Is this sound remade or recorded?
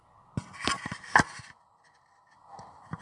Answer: recorded